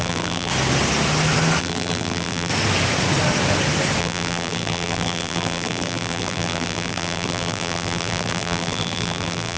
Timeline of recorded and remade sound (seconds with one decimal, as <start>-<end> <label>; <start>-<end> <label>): 0.0-0.5 remade; 0.5-1.6 recorded; 1.6-2.5 remade; 2.5-4.0 recorded; 4.0-9.6 remade